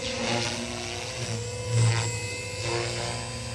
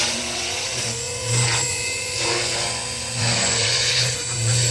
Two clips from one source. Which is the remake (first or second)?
second